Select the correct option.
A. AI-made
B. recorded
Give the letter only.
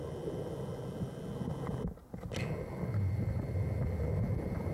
B